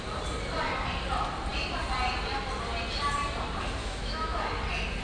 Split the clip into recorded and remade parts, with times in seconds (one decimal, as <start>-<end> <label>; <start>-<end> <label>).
0.0-3.8 recorded; 3.8-4.4 remade; 4.4-5.0 recorded